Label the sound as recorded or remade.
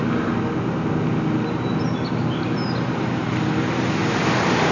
recorded